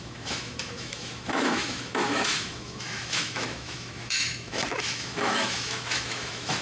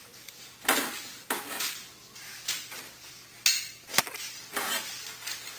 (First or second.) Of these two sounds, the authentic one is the second